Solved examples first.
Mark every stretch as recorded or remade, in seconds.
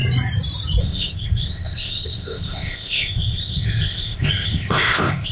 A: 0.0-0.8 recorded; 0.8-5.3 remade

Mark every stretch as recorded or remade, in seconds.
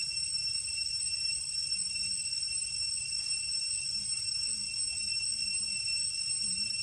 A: 0.0-6.8 recorded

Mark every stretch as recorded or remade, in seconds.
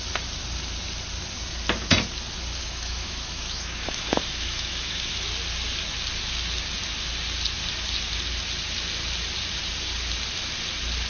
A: 0.0-2.6 recorded; 2.6-5.2 remade; 5.2-11.1 recorded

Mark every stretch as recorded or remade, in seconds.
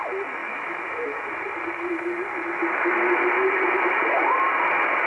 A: 0.0-0.4 recorded; 0.4-1.3 remade; 1.3-5.1 recorded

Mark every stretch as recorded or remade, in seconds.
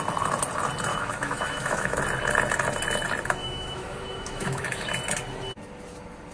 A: 0.0-0.9 recorded; 0.9-2.0 remade; 2.0-3.4 recorded; 3.4-4.9 remade; 4.9-6.3 recorded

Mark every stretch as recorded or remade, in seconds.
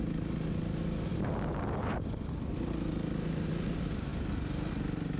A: 0.0-5.2 recorded